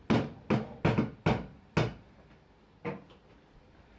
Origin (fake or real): real